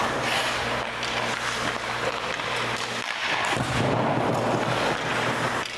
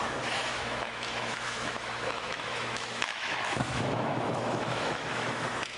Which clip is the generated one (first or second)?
second